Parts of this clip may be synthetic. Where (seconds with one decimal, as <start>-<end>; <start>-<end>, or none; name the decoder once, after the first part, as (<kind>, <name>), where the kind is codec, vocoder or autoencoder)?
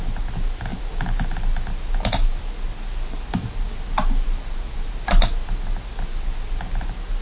none